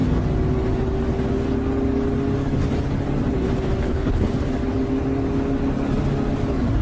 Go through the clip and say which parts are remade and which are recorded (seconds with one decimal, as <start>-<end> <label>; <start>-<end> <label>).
0.0-3.8 recorded; 3.8-4.3 remade; 4.3-6.8 recorded

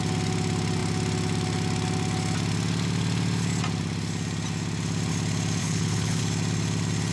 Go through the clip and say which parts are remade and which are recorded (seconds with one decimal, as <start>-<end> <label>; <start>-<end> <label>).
0.0-5.6 recorded; 5.6-6.2 remade; 6.2-7.1 recorded

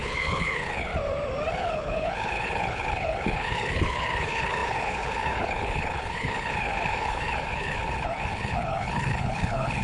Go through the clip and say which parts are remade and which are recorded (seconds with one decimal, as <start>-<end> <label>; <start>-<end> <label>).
0.0-0.9 remade; 0.9-1.6 recorded; 1.6-9.8 remade

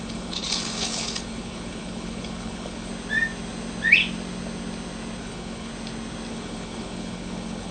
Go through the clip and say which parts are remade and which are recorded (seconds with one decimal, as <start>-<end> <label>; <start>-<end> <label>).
0.0-2.9 remade; 2.9-5.2 recorded; 5.2-5.7 remade; 5.7-6.3 recorded; 6.3-7.7 remade

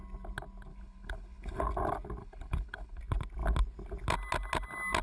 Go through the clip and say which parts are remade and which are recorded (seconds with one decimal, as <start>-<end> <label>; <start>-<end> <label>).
0.0-0.7 recorded; 0.7-1.6 remade; 1.6-2.2 recorded; 2.2-3.0 remade; 3.0-5.0 recorded

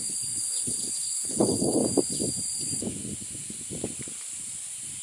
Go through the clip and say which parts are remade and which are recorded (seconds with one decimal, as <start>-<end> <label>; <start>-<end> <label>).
0.0-1.8 remade; 1.8-5.0 recorded